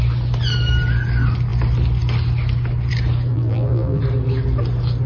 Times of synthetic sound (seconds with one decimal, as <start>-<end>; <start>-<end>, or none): 3.3-4.0